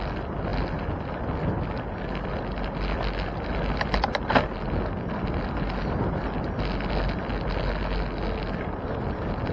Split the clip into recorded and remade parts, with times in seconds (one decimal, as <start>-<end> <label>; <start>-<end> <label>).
0.0-9.5 recorded